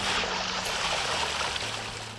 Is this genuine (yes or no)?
yes